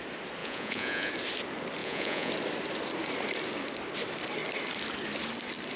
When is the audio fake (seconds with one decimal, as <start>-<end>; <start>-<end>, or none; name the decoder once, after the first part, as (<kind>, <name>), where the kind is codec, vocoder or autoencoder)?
0.4-1.1 (vocoder, Vocos); 1.8-2.3